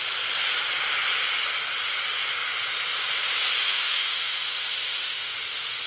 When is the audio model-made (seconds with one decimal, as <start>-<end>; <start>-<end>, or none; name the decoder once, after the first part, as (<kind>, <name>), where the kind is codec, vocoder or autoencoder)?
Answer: 3.6-5.3 (autoencoder, DAC-VAE)